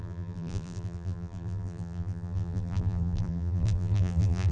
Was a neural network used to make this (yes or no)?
yes